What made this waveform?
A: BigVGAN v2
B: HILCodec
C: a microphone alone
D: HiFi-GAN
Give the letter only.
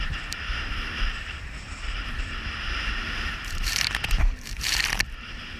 A